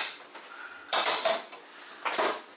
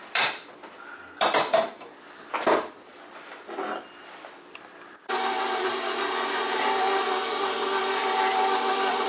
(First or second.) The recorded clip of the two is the first